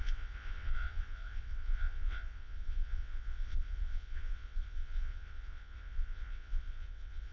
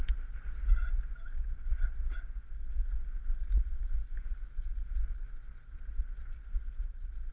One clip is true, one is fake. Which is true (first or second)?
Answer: second